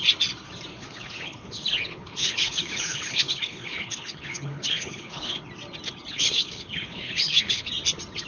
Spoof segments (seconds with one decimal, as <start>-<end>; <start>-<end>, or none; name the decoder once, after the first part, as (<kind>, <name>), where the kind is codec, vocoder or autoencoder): 0.7-5.4 (codec, HILCodec); 6.1-7.7